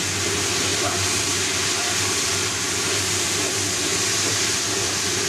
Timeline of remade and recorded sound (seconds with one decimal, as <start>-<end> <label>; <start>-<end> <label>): 0.0-5.3 recorded